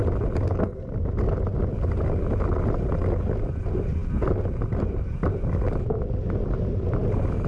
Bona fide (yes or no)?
yes